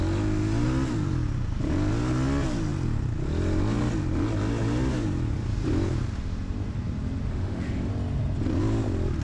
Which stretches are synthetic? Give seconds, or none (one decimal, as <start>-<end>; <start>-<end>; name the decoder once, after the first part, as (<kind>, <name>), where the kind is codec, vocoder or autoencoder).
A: 7.3-7.9 (autoencoder, DAC-VAE)